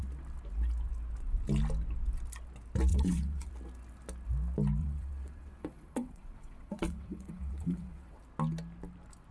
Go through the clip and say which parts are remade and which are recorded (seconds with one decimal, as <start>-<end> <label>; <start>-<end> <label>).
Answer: 0.0-2.9 recorded; 2.9-3.5 remade; 3.5-4.8 recorded; 4.8-8.2 remade; 8.2-9.3 recorded